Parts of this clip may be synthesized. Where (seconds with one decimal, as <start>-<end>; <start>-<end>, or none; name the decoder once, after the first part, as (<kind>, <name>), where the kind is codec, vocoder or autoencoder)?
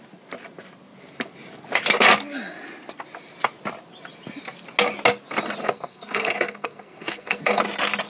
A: 5.6-7.6 (codec, SNAC)